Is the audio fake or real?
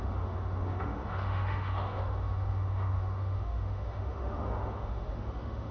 fake